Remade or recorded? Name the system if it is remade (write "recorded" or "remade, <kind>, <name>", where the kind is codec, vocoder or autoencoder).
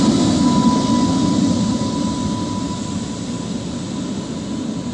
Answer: recorded